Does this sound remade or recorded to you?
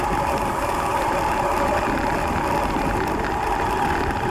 recorded